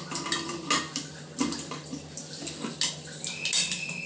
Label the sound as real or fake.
real